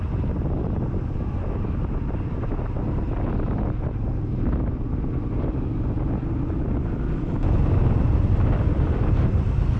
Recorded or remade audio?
recorded